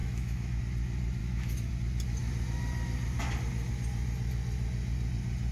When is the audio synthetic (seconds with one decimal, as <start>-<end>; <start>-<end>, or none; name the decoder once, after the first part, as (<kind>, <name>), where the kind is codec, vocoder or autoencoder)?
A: 0.0-0.6 (autoencoder, DAC-VAE); 1.2-1.7